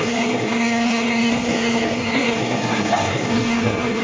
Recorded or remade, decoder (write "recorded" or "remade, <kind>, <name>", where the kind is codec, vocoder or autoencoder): remade, codec, SNAC